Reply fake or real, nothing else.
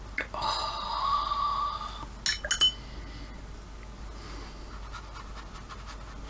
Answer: real